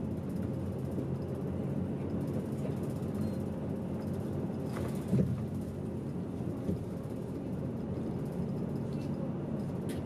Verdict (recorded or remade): recorded